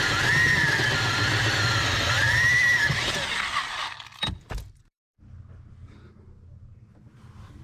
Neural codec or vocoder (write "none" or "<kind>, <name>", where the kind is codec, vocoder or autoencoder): none